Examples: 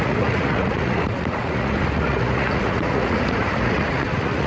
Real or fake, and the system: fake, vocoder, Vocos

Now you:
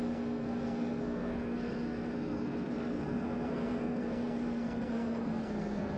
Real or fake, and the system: fake, codec, SNAC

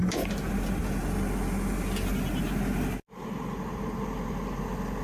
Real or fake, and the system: real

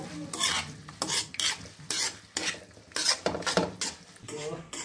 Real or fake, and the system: real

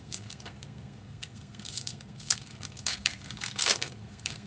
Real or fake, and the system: fake, codec, SNAC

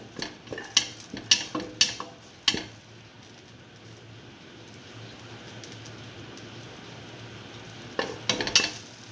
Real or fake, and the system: real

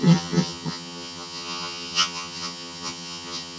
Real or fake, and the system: fake, vocoder, HiFi-GAN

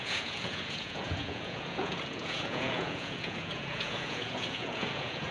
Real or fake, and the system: fake, vocoder, Vocos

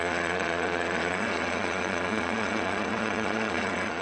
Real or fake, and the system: fake, vocoder, Vocos